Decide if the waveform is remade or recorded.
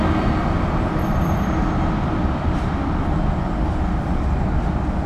recorded